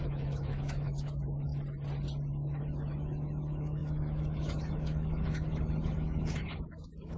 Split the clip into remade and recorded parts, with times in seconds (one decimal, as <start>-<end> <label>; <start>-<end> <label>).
0.0-1.5 remade; 1.5-2.3 recorded; 2.3-7.2 remade